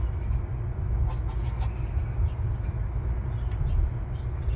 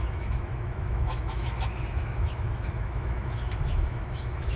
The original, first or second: first